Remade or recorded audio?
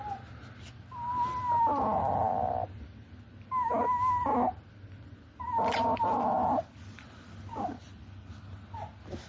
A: recorded